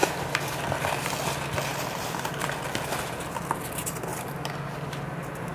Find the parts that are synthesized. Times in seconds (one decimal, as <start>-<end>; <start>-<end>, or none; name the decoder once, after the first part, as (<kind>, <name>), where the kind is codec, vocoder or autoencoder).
0.0-0.6 (vocoder, BigVGAN v2); 4.1-4.7